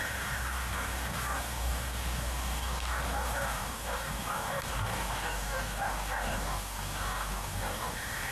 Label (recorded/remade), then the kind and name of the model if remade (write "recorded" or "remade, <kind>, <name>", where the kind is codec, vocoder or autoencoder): remade, codec, DAC